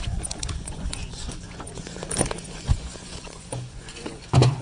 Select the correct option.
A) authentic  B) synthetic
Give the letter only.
B